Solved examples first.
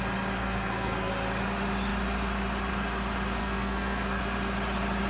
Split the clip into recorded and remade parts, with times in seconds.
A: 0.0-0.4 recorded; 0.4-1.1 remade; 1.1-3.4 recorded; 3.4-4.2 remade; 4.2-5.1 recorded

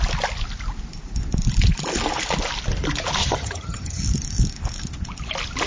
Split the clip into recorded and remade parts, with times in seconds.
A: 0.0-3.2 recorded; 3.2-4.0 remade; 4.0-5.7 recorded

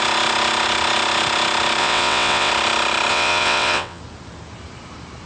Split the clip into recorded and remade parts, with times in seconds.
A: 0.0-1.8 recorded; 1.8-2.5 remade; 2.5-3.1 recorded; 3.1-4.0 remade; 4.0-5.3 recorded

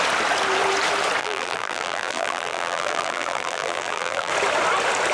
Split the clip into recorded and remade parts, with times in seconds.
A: 0.0-1.2 recorded; 1.2-4.3 remade; 4.3-5.1 recorded

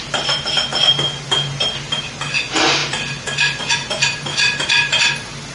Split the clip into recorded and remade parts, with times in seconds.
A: 0.0-5.5 recorded

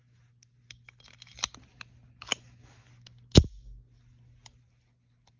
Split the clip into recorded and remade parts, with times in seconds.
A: 0.0-2.3 recorded; 2.3-2.9 remade; 2.9-5.4 recorded

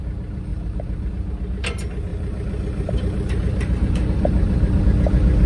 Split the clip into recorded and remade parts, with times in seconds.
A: 0.0-0.5 recorded; 0.5-1.1 remade; 1.1-2.1 recorded; 2.1-4.8 remade; 4.8-5.5 recorded